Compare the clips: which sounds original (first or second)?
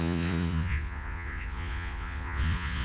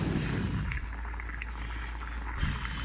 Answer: second